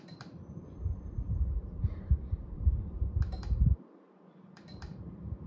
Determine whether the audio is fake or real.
fake